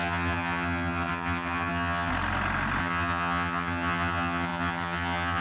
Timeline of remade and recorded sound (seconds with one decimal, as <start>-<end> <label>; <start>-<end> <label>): 0.0-2.1 remade; 2.1-2.8 recorded; 2.8-5.4 remade